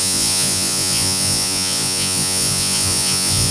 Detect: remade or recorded remade